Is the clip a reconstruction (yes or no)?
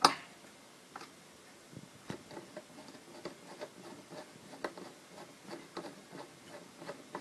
no